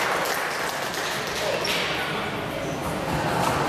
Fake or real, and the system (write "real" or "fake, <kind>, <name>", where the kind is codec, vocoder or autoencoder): real